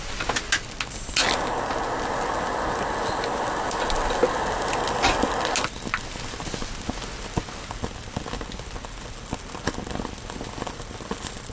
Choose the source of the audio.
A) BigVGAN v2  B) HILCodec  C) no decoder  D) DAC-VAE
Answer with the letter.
C